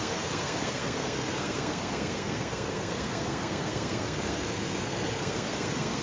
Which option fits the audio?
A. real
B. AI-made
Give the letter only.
B